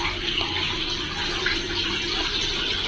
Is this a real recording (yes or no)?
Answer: yes